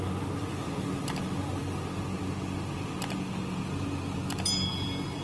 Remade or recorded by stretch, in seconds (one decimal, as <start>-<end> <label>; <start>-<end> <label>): 0.0-5.2 recorded